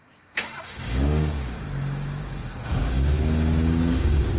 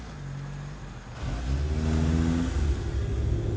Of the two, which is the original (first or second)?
second